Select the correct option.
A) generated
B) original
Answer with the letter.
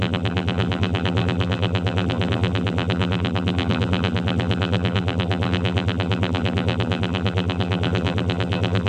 A